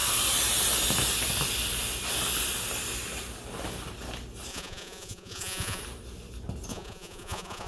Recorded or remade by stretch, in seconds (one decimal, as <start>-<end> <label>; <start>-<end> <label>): 0.0-4.5 recorded; 4.5-5.8 remade; 5.8-6.7 recorded; 6.7-7.7 remade